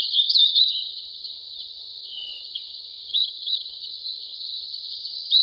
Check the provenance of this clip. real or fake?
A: fake